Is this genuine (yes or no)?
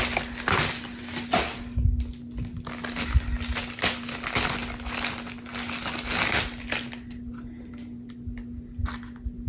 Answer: yes